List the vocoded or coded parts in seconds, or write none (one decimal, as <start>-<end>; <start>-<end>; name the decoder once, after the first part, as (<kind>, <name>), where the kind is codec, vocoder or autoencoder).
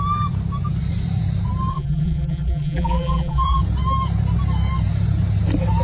1.7-3.6 (vocoder, BigVGAN v2)